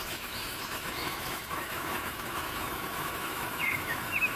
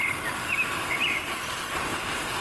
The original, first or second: second